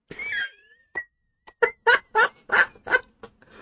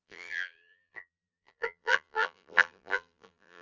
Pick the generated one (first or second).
second